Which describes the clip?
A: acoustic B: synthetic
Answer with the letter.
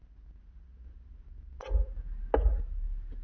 A